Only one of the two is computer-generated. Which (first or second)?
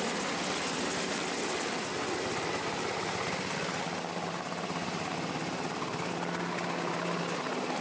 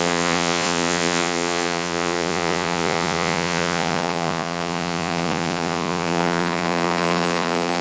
second